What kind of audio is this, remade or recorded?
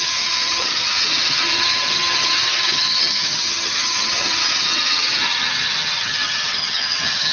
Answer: remade